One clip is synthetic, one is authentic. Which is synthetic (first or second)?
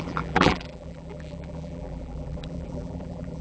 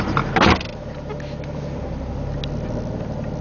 first